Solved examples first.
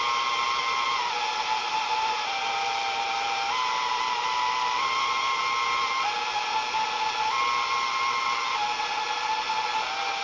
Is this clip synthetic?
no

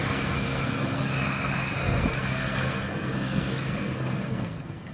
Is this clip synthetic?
yes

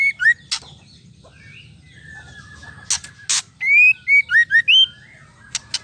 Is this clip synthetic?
no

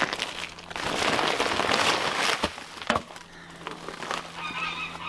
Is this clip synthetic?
no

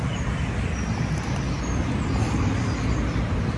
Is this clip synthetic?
no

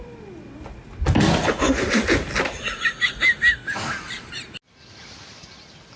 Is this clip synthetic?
no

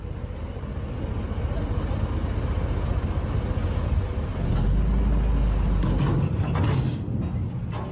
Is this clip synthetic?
no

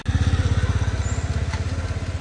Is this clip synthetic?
no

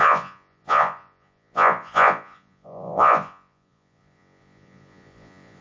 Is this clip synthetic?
yes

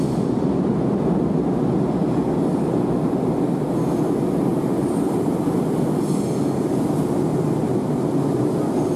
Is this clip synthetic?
no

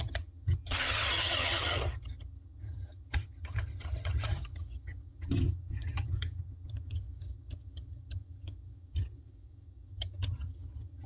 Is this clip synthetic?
yes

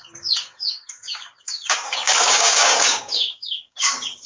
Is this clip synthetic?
yes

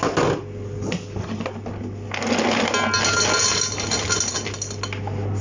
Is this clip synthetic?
no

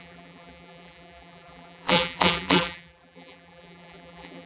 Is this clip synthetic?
yes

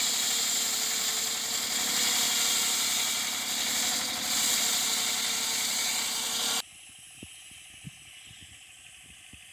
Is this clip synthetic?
no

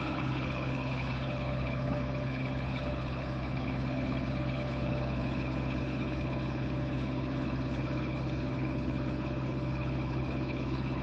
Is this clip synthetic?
yes